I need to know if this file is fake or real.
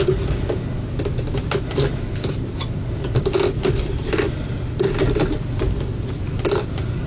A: real